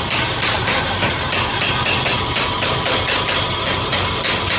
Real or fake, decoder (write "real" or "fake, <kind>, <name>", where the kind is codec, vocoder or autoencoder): real